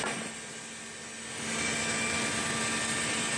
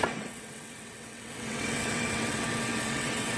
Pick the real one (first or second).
first